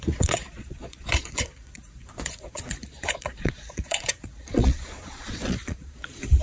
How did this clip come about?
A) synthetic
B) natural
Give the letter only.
A